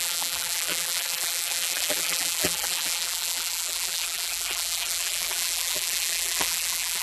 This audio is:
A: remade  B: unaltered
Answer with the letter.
A